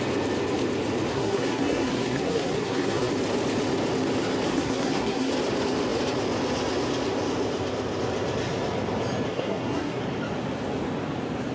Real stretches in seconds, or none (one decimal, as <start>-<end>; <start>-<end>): 0.0-1.1; 3.1-4.5; 5.3-9.3; 10.0-11.5